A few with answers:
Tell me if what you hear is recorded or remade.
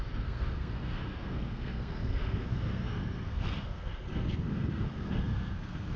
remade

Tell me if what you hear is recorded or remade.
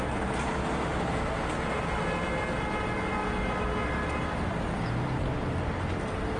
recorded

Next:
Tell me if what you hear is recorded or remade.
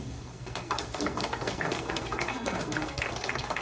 remade